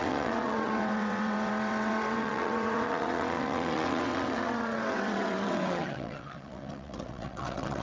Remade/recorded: remade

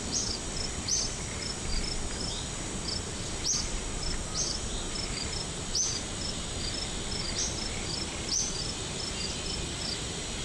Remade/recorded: recorded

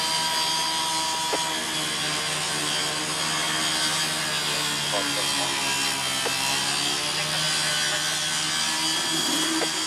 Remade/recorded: recorded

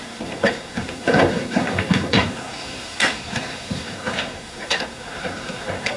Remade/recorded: remade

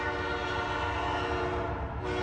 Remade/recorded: recorded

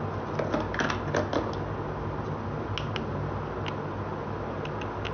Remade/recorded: recorded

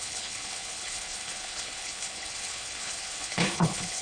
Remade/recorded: remade